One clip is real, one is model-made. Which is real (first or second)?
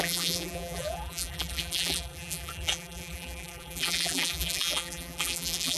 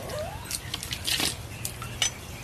second